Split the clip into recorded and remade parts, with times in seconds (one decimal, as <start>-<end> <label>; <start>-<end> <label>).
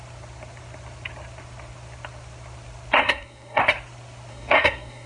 0.0-3.0 recorded; 3.0-3.6 remade; 3.6-4.3 recorded; 4.3-5.1 remade